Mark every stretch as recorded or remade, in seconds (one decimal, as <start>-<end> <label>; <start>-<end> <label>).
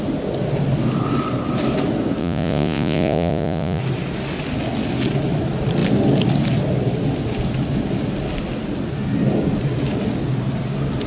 0.0-2.2 recorded; 2.2-3.8 remade; 3.8-11.1 recorded